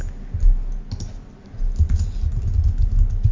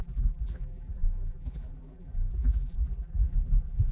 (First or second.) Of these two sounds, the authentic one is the first